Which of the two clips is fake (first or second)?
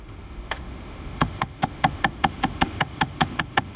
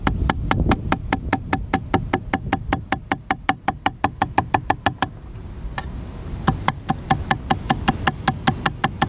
first